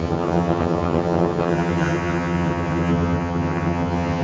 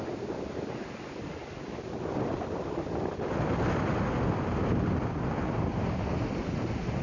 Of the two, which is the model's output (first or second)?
first